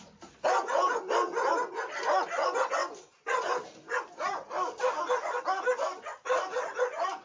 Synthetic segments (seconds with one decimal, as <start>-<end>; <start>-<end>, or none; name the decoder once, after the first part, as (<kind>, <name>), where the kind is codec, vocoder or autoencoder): 2.8-3.5 (vocoder, BigVGAN v2)